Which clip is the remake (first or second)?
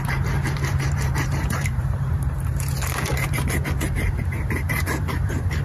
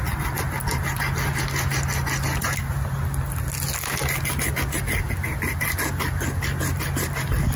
first